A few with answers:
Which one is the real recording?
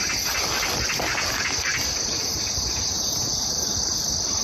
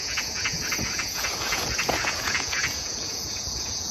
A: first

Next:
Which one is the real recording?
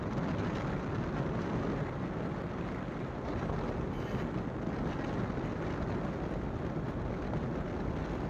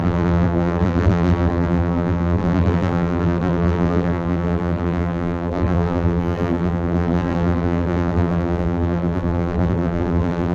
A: first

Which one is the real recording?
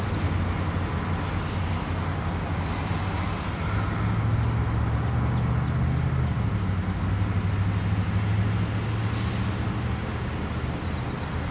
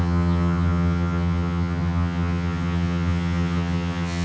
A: first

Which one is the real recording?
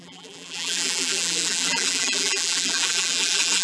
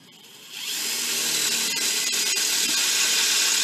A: second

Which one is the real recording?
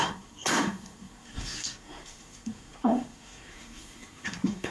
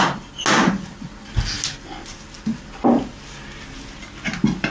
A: second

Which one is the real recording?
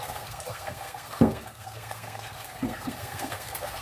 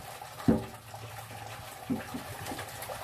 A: second